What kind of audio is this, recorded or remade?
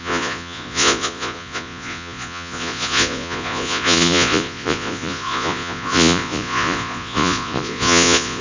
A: remade